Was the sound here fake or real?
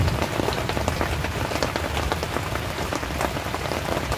real